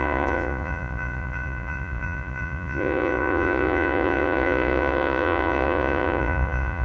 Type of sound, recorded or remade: remade